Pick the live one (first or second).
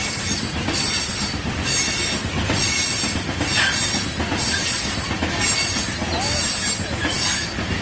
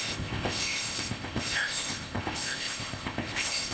first